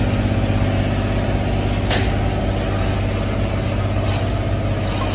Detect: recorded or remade recorded